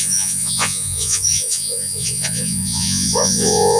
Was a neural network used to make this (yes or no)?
yes